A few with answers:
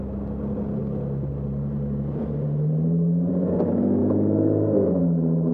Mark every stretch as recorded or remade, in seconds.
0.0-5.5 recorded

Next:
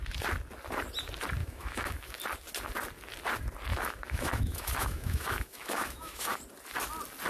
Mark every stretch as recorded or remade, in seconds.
0.0-1.4 recorded; 1.4-2.2 remade; 2.2-3.7 recorded; 3.7-6.4 remade; 6.4-7.3 recorded